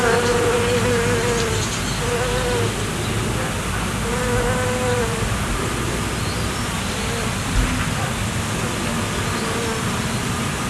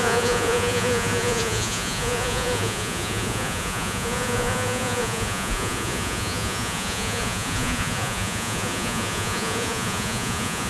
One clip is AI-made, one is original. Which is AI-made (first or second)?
second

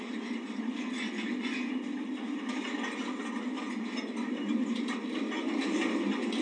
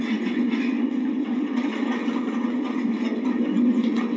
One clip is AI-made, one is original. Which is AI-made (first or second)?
second